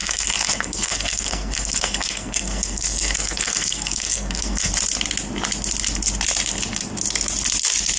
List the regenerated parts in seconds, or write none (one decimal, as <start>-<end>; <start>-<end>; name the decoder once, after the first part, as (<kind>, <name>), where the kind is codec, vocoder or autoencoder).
0.0-4.7 (codec, SNAC)